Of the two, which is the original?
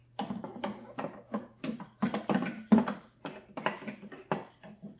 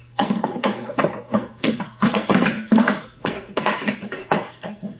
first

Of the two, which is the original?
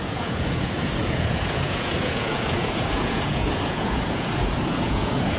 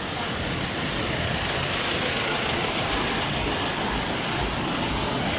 second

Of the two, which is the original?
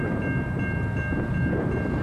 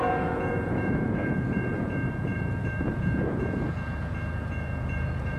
first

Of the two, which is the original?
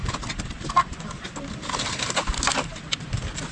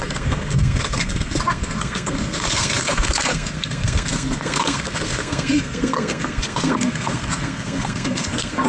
first